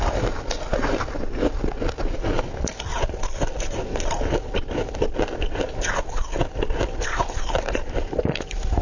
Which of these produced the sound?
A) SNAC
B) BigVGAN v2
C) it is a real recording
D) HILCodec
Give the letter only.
C